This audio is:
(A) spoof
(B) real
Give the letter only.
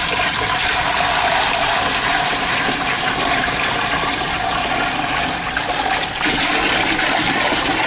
B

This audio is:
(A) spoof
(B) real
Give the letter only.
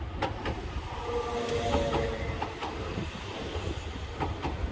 B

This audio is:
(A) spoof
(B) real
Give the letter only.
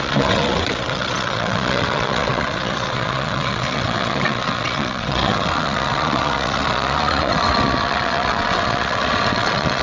A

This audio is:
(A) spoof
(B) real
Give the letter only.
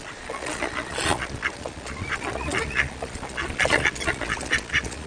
A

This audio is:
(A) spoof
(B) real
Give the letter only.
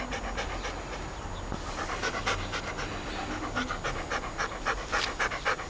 B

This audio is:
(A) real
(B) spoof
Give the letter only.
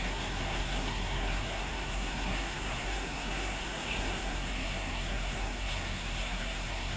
B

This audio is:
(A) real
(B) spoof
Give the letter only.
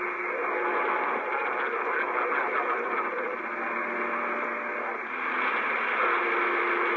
A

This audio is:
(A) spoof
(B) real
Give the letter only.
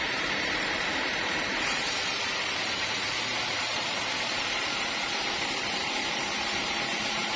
A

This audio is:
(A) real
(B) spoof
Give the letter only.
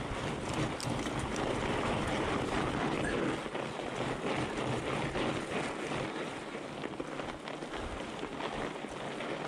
A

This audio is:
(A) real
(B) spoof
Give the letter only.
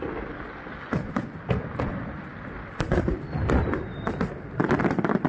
A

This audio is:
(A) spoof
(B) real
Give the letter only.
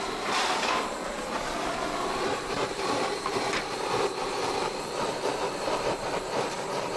A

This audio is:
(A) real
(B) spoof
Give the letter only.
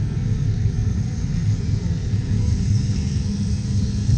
B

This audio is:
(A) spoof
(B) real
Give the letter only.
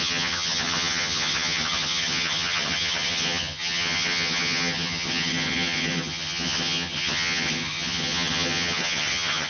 A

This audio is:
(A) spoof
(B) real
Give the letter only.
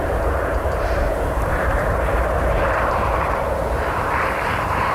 A